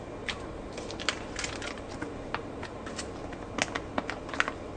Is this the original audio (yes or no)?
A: yes